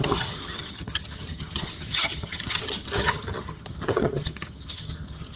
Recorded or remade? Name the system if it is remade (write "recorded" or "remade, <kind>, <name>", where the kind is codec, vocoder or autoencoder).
remade, vocoder, HiFi-GAN